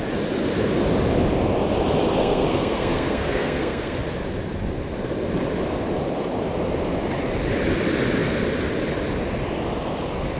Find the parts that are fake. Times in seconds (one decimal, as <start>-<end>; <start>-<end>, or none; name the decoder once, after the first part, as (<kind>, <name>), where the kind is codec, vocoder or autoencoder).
2.2-4.0 (codec, SNAC)